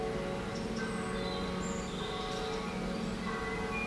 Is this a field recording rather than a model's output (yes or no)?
yes